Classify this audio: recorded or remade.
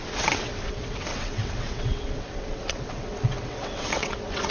remade